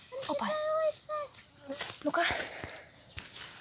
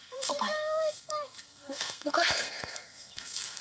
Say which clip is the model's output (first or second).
second